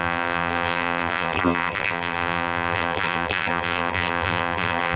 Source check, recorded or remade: remade